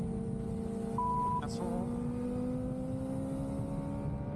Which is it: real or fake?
real